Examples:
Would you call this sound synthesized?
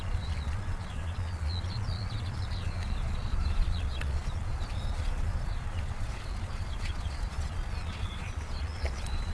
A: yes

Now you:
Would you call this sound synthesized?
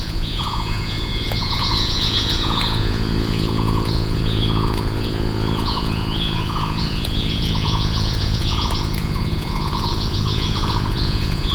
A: yes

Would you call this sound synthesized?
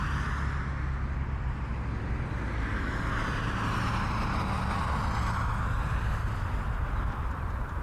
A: no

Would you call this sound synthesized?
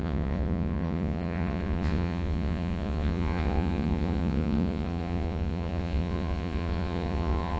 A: yes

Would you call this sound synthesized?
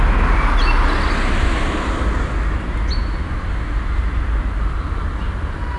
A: no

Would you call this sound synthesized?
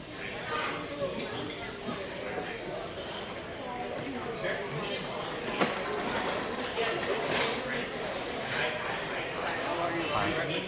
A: no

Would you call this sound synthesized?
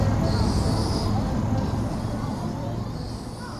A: no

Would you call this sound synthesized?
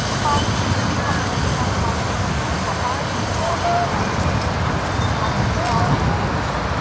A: no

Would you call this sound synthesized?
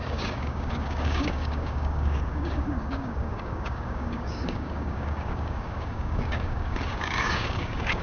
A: yes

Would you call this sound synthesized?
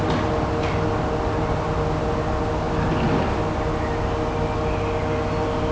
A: no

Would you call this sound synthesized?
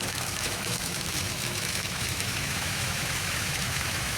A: yes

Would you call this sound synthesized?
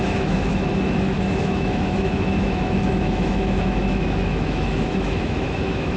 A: yes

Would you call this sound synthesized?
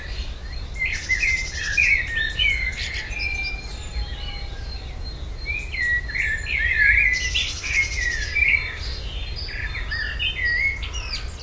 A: no